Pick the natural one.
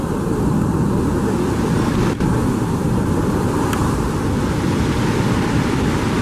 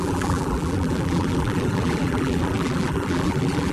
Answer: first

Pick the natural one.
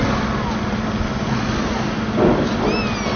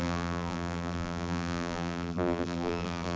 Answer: first